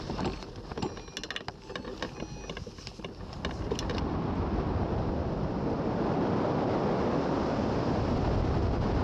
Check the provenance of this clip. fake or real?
real